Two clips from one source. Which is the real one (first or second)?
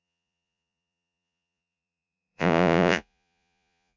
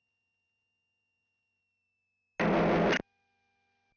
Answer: second